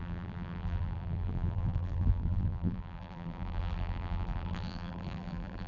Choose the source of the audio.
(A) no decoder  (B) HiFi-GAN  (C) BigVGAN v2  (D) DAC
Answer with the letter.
C